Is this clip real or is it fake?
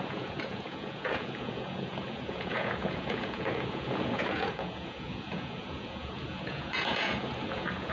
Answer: fake